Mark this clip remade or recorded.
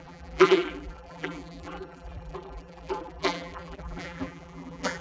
remade